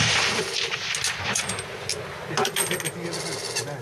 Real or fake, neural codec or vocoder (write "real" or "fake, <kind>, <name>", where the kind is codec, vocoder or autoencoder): real